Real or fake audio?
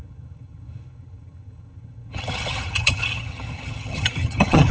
fake